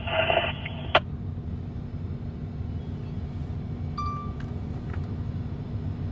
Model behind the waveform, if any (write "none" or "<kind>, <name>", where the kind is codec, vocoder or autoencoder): none